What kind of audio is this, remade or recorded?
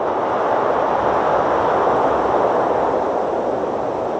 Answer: recorded